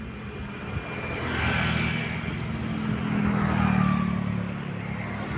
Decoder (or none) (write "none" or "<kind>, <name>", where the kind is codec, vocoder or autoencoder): none